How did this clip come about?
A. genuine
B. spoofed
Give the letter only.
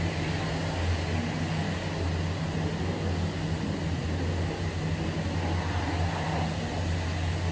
A